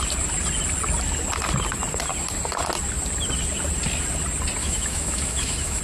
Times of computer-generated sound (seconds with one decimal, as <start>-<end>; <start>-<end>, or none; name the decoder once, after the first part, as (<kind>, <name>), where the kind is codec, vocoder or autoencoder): 4.6-5.8 (autoencoder, DAC-VAE)